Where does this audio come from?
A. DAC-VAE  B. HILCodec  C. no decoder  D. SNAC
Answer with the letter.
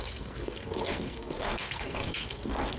D